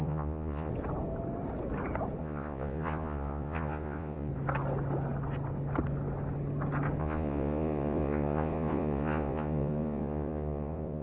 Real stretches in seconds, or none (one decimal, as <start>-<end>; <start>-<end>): 0.7-2.2; 4.3-7.0